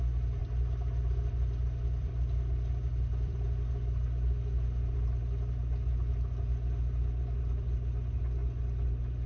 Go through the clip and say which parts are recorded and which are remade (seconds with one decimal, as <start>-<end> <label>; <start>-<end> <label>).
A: 0.0-0.4 recorded; 0.4-5.2 remade; 5.2-8.4 recorded; 8.4-8.9 remade; 8.9-9.3 recorded